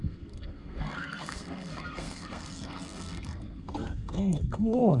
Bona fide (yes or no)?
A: no